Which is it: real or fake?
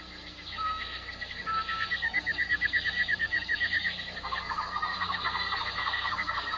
fake